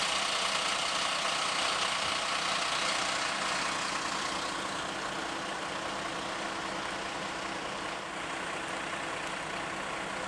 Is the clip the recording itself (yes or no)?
yes